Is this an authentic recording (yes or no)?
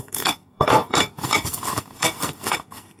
no